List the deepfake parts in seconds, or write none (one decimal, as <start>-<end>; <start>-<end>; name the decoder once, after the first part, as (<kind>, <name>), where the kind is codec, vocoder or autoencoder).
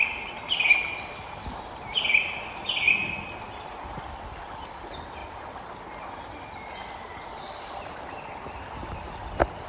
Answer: none